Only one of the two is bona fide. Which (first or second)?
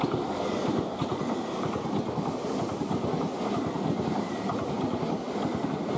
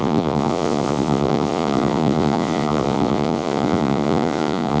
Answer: first